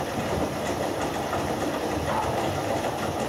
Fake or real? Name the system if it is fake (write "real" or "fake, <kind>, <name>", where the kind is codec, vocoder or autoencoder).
fake, vocoder, BigVGAN v2